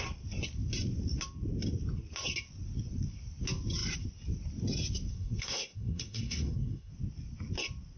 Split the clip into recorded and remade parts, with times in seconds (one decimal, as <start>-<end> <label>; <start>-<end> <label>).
0.0-5.1 recorded; 5.1-6.9 remade; 6.9-8.0 recorded